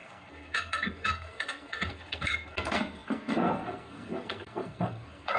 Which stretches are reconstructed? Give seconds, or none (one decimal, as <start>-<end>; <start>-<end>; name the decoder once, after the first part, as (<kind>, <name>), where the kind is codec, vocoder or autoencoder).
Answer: 0.0-5.4 (codec, SNAC)